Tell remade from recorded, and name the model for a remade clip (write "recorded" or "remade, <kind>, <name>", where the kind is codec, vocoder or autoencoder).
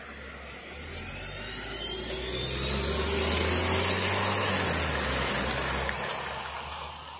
recorded